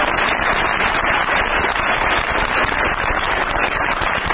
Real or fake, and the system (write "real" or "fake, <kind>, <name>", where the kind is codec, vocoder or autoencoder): fake, vocoder, BigVGAN v2